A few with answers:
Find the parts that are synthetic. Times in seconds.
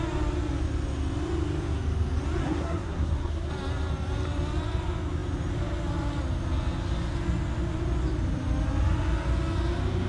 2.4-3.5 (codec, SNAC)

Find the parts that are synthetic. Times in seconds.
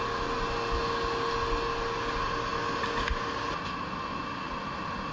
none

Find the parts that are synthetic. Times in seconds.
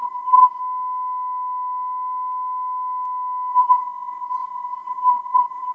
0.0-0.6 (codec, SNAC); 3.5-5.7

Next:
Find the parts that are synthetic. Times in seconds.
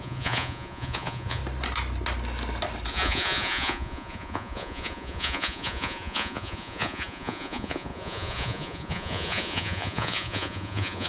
0.0-1.4 (vocoder, Vocos); 2.9-11.1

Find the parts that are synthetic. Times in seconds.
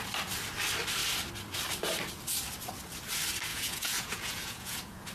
3.5-5.1 (vocoder, Vocos)